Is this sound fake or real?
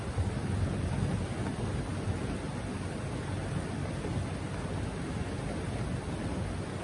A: real